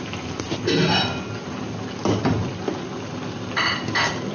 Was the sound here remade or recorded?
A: recorded